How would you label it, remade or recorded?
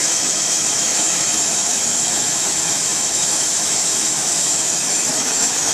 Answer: remade